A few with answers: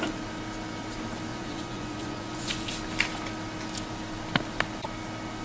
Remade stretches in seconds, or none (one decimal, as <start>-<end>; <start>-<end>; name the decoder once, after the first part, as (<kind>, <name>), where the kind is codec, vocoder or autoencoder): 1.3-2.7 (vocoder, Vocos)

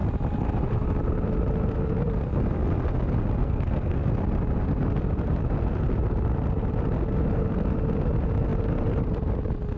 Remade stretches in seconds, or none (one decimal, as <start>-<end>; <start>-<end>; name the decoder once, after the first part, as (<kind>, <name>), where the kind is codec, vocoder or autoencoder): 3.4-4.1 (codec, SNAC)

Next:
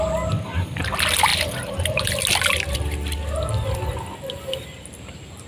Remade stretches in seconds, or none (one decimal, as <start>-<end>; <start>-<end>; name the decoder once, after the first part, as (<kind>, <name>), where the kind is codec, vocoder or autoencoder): none